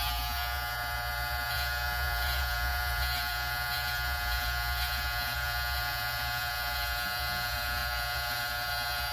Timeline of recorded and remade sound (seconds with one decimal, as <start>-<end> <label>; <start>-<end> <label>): 0.0-9.1 remade